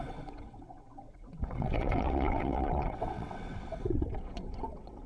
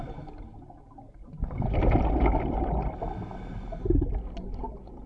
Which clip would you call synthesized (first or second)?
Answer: first